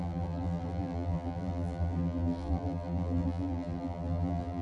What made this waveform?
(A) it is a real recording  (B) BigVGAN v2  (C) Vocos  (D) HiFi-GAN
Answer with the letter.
B